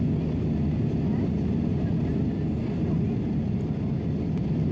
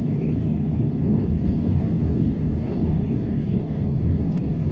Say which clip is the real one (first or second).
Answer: first